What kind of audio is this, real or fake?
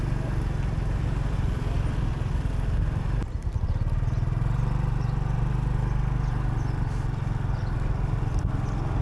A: real